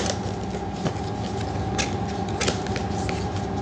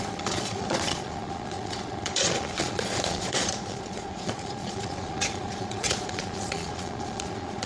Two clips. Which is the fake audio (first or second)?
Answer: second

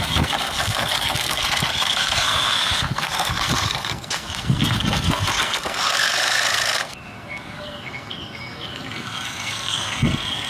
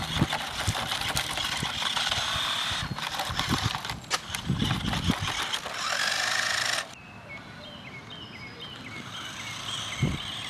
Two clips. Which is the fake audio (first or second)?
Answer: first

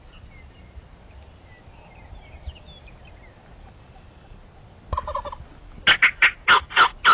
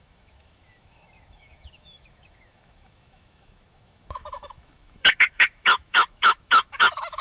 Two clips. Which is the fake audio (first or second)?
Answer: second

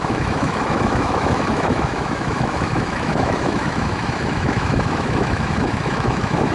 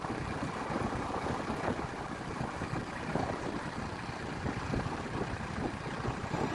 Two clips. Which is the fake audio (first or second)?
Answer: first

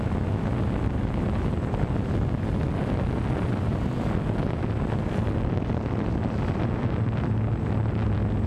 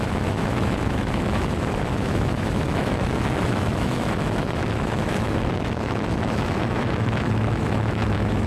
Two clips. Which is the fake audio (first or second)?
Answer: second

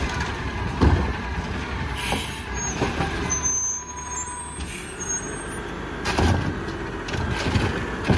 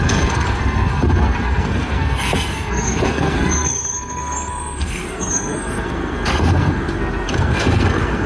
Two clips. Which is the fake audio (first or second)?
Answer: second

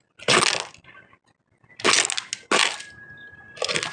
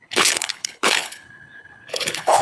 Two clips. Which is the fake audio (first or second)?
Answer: second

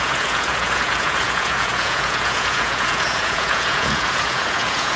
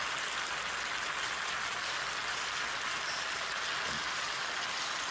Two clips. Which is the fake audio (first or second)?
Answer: first